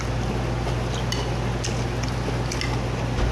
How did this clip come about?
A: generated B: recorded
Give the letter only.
B